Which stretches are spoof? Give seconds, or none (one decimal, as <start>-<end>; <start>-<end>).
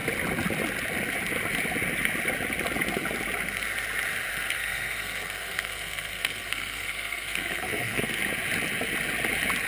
4.3-8.2